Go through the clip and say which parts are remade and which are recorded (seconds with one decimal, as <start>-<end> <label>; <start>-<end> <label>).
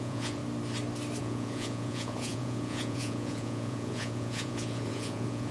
0.0-0.4 remade; 0.4-1.2 recorded; 1.2-5.5 remade